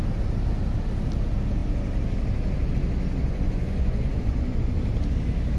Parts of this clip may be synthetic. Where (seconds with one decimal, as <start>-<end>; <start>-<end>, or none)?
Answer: 3.2-4.8